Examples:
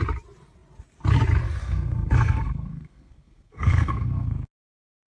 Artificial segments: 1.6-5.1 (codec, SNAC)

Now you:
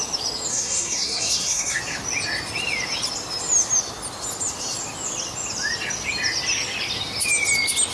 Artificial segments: 0.5-1.8 (codec, SNAC)

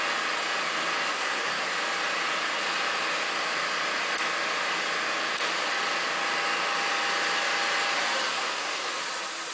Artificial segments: 1.1-1.7 (codec, SNAC); 8.3-8.9

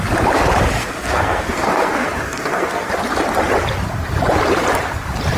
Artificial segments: 0.8-2.9 (codec, SNAC)

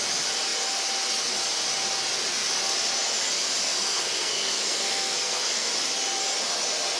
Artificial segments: 3.6-5.7 (codec, SNAC)

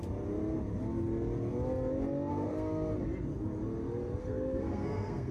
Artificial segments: 2.3-2.9 (codec, SNAC); 4.2-5.3

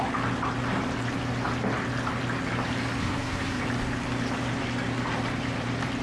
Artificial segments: 3.0-3.6 (codec, SNAC)

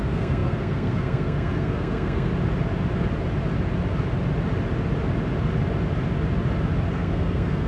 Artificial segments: 0.0-2.3 (codec, SNAC); 6.9-7.7